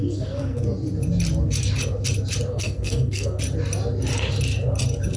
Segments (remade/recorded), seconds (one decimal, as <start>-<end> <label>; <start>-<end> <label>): 0.0-0.6 remade; 0.6-2.5 recorded; 2.5-3.4 remade; 3.4-5.2 recorded